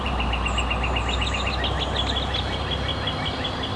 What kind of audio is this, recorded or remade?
recorded